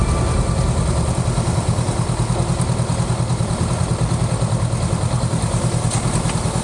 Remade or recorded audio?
recorded